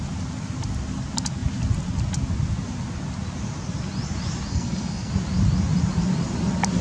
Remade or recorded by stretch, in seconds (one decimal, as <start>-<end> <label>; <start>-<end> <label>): 0.0-4.5 recorded; 4.5-5.1 remade; 5.1-6.8 recorded